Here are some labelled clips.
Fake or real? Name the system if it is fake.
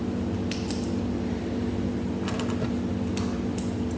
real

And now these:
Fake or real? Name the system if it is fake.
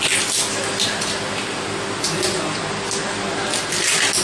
real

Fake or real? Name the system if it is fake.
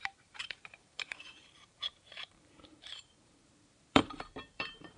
fake, vocoder, BigVGAN v2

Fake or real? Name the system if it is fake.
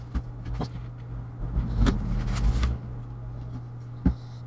real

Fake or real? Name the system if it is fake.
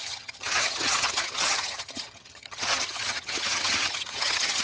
fake, vocoder, HiFi-GAN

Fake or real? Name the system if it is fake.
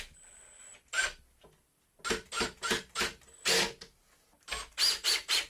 real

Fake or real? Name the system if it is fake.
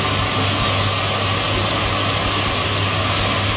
real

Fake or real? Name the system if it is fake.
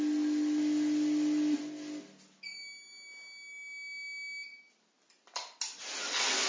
real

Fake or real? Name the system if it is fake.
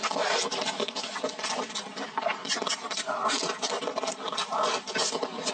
real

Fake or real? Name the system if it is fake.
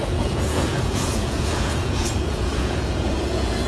fake, vocoder, Vocos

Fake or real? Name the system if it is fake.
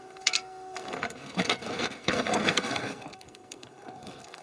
fake, codec, SNAC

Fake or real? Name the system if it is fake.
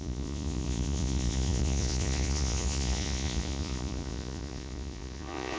fake, vocoder, Vocos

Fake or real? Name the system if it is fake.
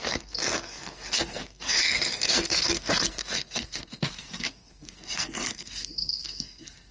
fake, codec, SNAC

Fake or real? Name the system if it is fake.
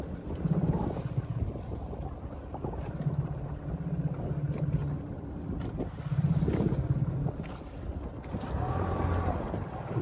real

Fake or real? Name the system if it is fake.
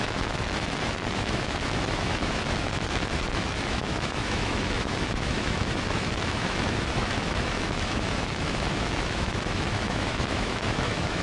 fake, autoencoder, DAC-VAE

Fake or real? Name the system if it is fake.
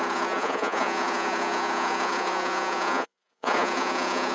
fake, vocoder, Vocos